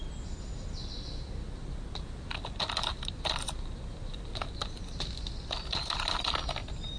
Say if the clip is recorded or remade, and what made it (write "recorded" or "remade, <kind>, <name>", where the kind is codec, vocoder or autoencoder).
recorded